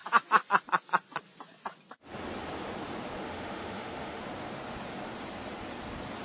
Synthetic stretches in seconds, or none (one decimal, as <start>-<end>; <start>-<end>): 3.2-4.2